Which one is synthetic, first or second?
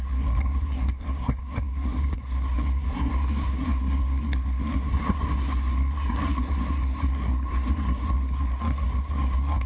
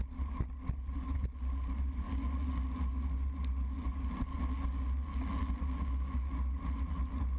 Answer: first